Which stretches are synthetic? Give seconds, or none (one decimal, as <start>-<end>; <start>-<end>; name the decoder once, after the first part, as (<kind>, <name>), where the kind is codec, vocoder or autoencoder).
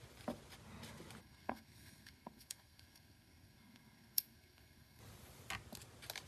1.2-5.0 (codec, SNAC)